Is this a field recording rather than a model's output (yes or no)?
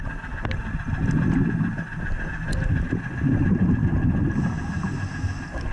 yes